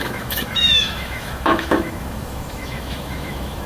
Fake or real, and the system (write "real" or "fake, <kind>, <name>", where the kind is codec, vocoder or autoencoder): fake, autoencoder, DAC-VAE